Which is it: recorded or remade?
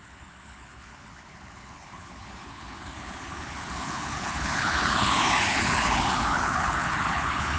remade